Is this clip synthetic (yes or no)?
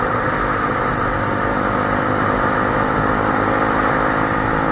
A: no